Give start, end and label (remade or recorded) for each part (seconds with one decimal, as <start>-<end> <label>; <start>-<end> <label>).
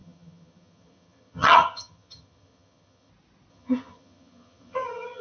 0.0-3.1 remade; 3.1-3.5 recorded; 3.5-5.2 remade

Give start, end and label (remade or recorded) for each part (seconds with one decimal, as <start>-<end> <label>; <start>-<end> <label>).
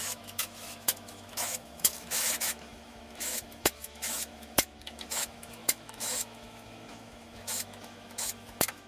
0.0-8.9 remade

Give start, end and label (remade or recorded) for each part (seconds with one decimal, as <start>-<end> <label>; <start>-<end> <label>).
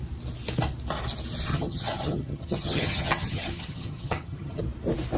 0.0-1.5 recorded; 1.5-4.6 remade; 4.6-5.2 recorded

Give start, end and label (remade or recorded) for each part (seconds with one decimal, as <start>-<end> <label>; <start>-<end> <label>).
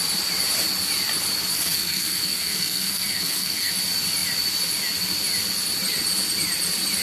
0.0-1.5 recorded; 1.5-3.7 remade; 3.7-7.0 recorded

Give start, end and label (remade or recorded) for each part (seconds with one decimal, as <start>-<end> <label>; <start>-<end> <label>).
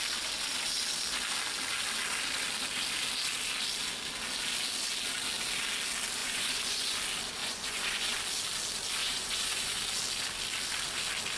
0.0-6.2 recorded; 6.2-7.0 remade; 7.0-7.4 recorded; 7.4-8.2 remade; 8.2-9.0 recorded; 9.0-9.8 remade; 9.8-11.4 recorded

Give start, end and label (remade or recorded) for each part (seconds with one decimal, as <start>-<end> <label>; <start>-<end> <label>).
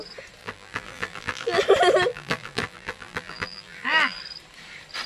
0.0-0.4 recorded; 0.4-1.6 remade; 1.6-2.1 recorded; 2.1-4.2 remade; 4.2-5.1 recorded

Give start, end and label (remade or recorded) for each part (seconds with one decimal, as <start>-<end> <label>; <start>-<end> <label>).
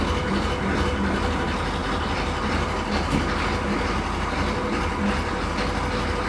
0.0-6.3 recorded